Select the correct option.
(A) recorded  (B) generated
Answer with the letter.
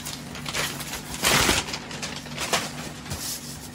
A